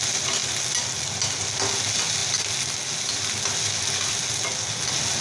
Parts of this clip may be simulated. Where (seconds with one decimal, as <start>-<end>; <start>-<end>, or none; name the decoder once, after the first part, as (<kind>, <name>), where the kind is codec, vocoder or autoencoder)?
none